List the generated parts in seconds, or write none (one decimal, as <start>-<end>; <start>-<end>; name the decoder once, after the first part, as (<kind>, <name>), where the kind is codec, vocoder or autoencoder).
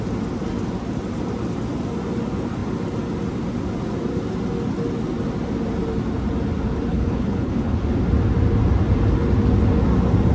6.9-7.8 (codec, HILCodec)